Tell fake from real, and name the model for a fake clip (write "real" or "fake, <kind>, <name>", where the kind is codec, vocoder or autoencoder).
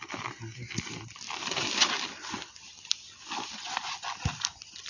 real